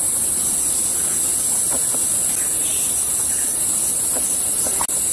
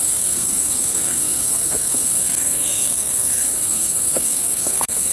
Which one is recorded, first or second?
first